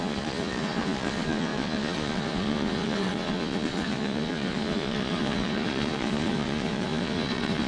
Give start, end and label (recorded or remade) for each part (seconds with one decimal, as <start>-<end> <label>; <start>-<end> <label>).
0.0-7.7 remade